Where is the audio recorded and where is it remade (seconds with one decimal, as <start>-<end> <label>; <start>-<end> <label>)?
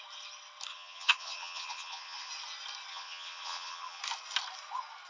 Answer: 0.0-0.7 recorded; 0.7-2.3 remade; 2.3-2.9 recorded; 2.9-4.0 remade; 4.0-5.1 recorded